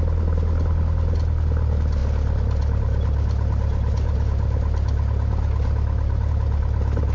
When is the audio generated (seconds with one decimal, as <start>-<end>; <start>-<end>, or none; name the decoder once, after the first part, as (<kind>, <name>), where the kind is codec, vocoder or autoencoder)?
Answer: none